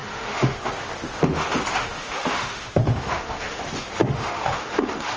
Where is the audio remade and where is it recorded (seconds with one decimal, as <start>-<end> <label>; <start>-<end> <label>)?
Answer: 0.0-0.7 remade; 0.7-1.7 recorded; 1.7-3.6 remade; 3.6-4.0 recorded; 4.0-5.2 remade